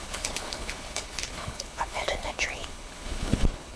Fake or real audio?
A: fake